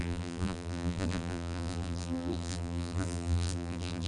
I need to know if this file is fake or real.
fake